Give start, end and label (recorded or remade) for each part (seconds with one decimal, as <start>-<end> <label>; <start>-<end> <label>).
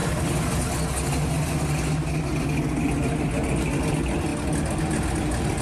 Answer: 0.0-5.6 recorded